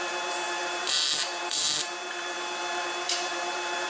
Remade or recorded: remade